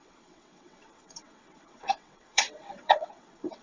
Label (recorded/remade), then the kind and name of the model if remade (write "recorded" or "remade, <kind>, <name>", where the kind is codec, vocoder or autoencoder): remade, vocoder, WaveNeXt